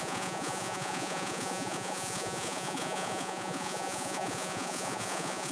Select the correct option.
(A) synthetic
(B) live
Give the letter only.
A